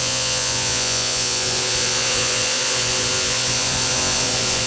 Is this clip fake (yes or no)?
yes